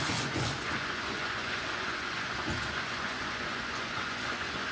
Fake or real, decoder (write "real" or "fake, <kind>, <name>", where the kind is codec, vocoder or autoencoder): fake, vocoder, Vocos